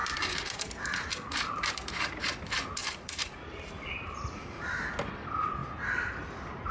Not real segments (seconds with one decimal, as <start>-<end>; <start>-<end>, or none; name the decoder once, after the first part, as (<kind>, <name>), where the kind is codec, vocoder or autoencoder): 0.0-2.2 (vocoder, BigVGAN v2); 2.8-4.8